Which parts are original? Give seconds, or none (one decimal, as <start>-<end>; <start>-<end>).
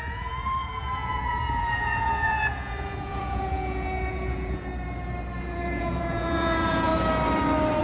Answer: 4.7-5.4; 6.9-7.8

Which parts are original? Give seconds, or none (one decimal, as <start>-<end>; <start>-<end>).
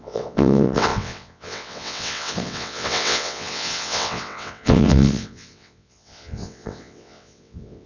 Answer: none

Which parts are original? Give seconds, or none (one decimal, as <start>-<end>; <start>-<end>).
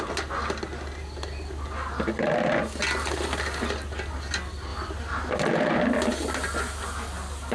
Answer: 0.0-7.5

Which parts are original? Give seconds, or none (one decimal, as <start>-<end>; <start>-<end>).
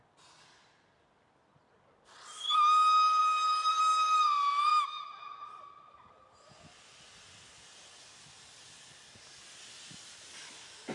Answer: 0.0-3.2; 3.8-10.9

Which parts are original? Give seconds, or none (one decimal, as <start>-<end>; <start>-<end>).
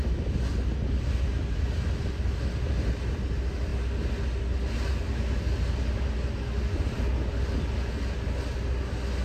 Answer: 0.0-9.2